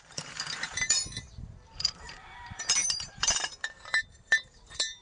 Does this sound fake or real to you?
fake